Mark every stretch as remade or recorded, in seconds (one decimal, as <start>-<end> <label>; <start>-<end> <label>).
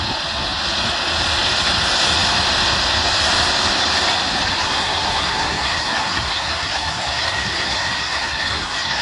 0.0-4.6 recorded; 4.6-9.0 remade